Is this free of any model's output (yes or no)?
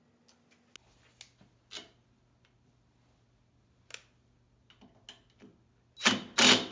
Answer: yes